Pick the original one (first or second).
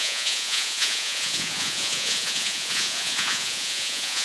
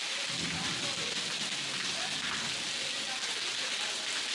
second